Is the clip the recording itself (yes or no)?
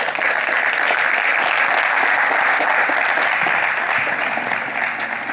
yes